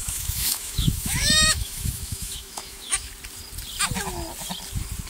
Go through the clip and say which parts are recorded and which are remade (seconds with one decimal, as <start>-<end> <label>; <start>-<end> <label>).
0.0-3.1 remade; 3.1-5.1 recorded